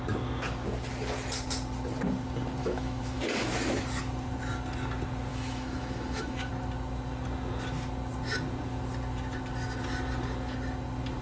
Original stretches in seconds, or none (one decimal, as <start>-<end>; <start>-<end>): 0.0-2.6; 3.2-5.3; 6.5-11.2